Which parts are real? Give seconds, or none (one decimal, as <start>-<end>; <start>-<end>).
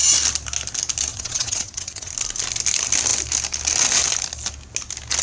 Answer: 0.0-1.1; 2.1-5.2